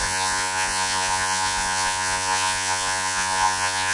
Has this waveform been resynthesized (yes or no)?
yes